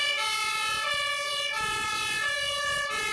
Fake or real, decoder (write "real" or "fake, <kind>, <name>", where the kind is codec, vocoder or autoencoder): fake, vocoder, Vocos